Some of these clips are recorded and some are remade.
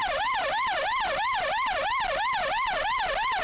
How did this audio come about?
recorded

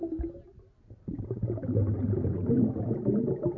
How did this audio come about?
recorded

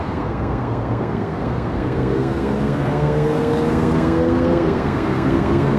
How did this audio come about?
remade